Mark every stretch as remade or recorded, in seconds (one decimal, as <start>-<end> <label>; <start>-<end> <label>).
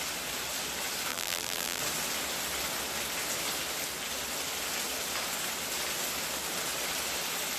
0.0-1.1 recorded; 1.1-1.8 remade; 1.8-7.6 recorded